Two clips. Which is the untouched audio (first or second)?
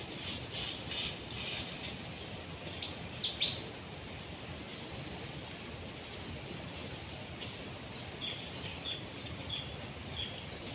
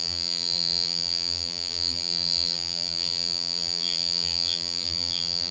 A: first